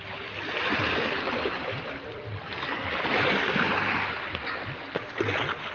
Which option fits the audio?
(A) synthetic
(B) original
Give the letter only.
B